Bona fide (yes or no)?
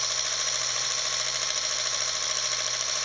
no